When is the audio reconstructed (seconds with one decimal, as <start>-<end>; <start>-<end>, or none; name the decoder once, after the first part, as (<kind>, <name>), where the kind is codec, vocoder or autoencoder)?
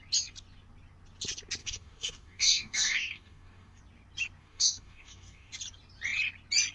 1.6-3.8 (codec, DAC); 4.4-5.5